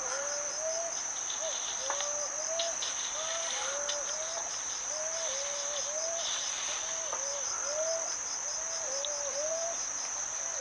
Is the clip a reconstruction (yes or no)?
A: no